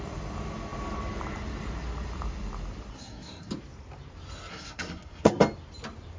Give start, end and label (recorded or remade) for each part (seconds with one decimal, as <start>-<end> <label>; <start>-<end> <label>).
0.0-2.9 recorded; 2.9-3.5 remade; 3.5-4.5 recorded; 4.5-5.4 remade; 5.4-6.2 recorded